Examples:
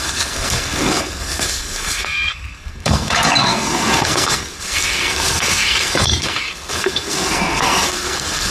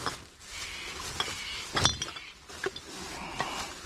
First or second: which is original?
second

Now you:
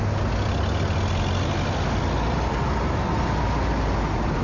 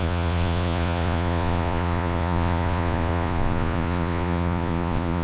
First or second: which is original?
first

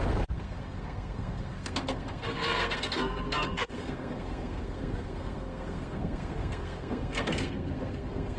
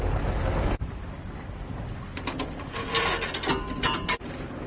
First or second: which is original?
second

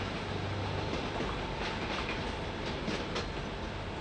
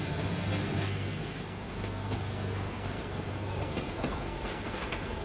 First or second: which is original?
first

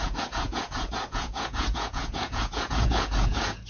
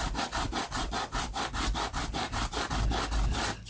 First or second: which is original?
second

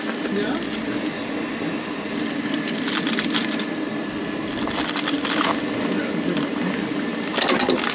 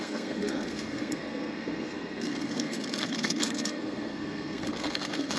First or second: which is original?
first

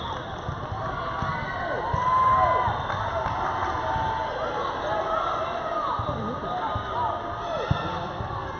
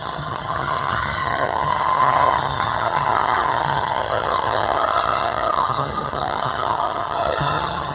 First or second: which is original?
first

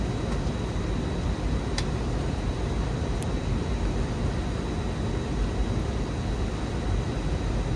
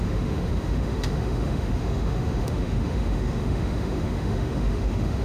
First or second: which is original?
first